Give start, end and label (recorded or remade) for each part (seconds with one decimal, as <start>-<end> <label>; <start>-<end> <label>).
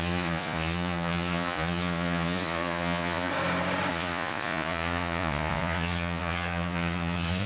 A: 0.0-3.3 remade; 3.3-3.9 recorded; 3.9-7.5 remade